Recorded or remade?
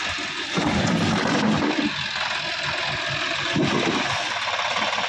recorded